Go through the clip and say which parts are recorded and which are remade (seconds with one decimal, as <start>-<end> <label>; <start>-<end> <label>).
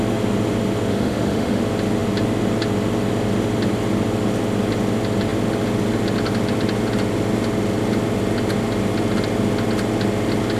0.0-0.9 recorded; 0.9-1.6 remade; 1.6-10.6 recorded